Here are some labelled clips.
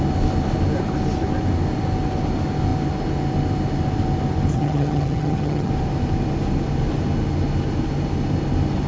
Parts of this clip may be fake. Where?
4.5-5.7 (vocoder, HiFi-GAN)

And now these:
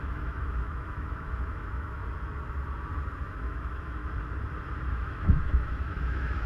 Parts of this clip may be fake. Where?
0.0-2.0 (autoencoder, DAC-VAE); 3.2-4.0; 4.9-6.5

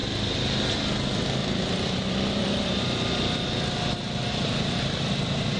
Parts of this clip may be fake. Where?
0.0-0.5 (vocoder, BigVGAN v2); 1.4-3.5